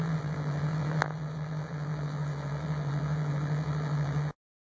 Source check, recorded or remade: remade